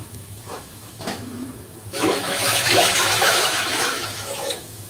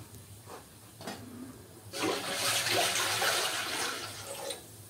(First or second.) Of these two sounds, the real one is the second